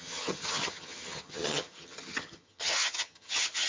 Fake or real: fake